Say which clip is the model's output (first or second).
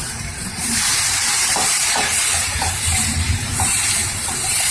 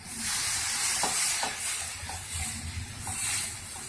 first